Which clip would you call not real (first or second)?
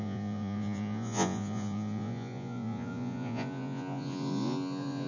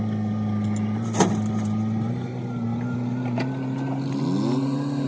first